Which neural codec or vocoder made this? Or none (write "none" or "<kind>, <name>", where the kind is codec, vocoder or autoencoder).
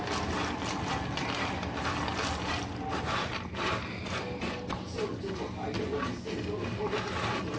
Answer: none